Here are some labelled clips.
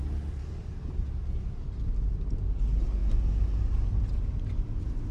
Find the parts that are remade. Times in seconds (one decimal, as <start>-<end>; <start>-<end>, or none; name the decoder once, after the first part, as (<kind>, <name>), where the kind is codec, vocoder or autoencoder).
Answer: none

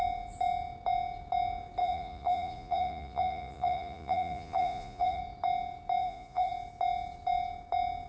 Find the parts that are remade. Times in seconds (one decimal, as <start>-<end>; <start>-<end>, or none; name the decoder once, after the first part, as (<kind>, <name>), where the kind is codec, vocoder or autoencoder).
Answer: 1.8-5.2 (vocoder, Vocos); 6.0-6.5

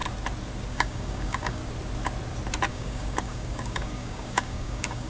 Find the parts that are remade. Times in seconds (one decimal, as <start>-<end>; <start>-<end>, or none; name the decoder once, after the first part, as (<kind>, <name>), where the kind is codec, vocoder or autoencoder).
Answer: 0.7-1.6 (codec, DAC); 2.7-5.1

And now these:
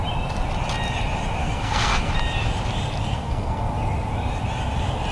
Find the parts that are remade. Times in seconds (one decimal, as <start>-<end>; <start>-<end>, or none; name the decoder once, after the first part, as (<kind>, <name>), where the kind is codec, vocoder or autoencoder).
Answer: 1.4-2.1 (codec, SNAC); 3.1-3.7

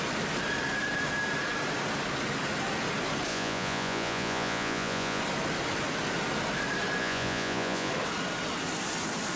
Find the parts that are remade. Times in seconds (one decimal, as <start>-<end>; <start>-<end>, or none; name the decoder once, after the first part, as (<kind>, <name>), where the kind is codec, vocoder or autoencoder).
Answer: 3.3-5.2 (vocoder, Vocos); 7.0-7.9